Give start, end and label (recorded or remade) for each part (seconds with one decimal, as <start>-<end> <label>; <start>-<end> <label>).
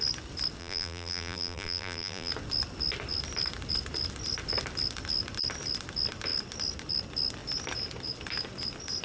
0.0-0.6 recorded; 0.6-2.3 remade; 2.3-9.0 recorded